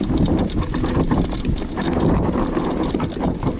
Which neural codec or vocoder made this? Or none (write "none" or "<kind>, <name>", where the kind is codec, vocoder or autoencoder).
none